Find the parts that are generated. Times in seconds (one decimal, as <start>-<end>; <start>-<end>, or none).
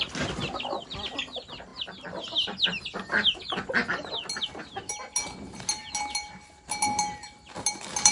none